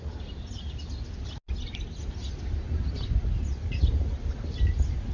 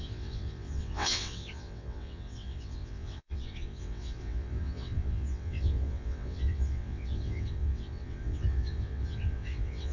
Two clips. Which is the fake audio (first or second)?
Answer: second